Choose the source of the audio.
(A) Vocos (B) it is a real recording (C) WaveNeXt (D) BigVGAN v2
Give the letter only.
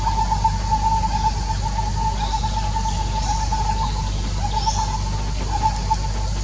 B